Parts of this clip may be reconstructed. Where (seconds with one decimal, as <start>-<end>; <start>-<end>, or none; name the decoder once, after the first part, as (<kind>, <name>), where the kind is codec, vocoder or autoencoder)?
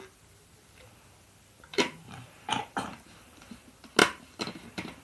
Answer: 1.7-3.6 (vocoder, BigVGAN v2); 4.0-5.0